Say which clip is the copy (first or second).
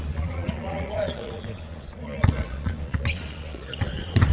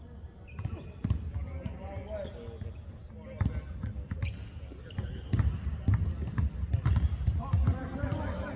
first